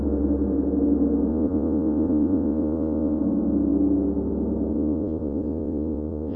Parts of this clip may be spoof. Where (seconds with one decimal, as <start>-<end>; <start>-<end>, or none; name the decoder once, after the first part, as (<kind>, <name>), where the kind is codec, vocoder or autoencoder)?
1.3-3.2 (vocoder, Vocos); 4.7-6.4